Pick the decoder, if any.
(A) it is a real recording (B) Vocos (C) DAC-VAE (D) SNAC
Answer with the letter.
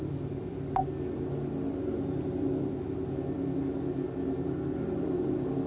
A